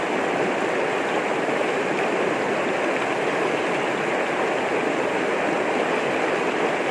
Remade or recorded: recorded